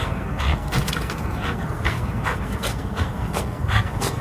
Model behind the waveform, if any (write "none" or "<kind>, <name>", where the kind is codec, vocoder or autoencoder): codec, SNAC